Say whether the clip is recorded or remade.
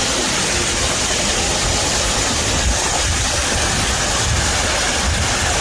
recorded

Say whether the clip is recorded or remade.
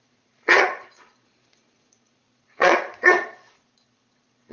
remade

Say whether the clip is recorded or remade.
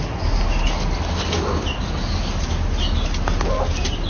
recorded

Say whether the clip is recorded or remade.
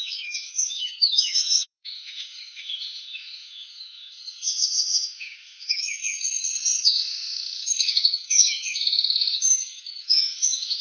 remade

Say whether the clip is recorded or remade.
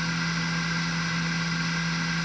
recorded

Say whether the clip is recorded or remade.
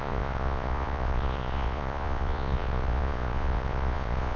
remade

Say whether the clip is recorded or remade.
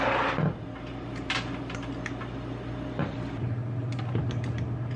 recorded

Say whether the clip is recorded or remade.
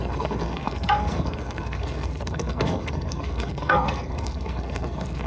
remade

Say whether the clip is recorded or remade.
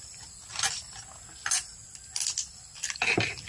recorded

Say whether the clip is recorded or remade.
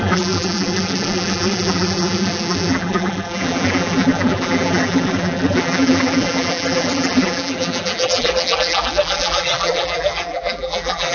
remade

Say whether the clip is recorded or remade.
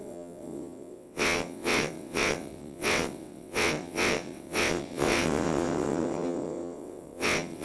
remade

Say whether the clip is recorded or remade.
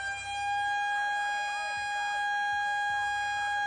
recorded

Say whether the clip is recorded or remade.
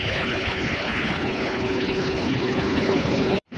remade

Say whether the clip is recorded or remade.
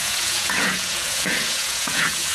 remade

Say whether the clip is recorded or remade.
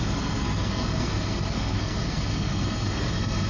remade